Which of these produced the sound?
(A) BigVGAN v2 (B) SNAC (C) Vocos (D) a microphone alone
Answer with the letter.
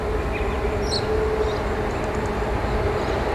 D